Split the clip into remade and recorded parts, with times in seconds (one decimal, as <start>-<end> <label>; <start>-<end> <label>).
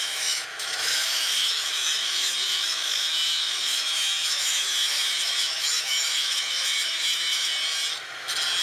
0.0-7.5 remade; 7.5-8.6 recorded